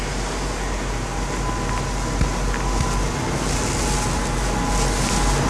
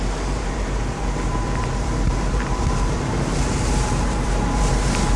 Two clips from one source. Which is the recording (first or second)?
first